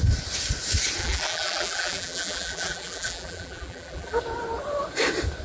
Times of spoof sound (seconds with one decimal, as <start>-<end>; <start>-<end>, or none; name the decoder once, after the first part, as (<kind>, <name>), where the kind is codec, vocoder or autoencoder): 1.0-4.2 (vocoder, BigVGAN v2)